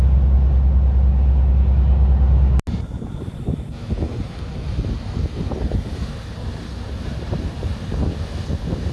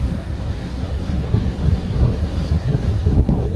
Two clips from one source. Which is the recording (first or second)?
first